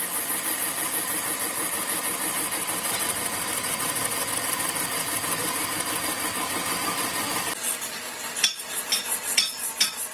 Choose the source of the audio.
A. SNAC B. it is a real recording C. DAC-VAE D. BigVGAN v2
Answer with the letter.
B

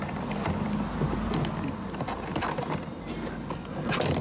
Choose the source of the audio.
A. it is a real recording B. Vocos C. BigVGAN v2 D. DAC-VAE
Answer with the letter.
A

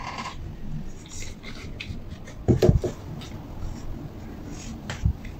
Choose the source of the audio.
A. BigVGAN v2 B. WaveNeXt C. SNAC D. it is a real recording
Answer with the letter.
D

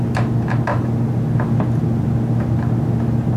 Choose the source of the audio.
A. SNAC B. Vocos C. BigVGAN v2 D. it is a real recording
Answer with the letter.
D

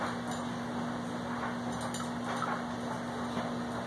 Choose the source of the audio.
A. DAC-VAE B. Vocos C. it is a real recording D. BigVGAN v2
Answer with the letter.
C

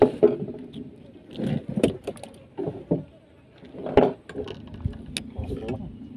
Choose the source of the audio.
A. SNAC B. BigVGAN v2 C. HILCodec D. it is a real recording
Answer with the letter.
D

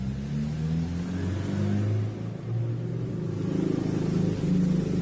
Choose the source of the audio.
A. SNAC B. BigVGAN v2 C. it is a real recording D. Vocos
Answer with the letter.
C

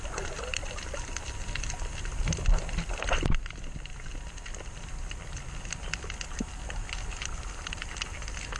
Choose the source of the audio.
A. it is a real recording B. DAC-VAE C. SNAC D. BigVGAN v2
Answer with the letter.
A